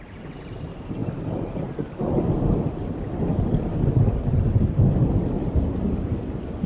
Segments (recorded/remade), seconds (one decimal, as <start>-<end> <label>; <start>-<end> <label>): 0.0-6.7 recorded